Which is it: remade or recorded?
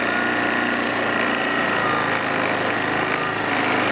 recorded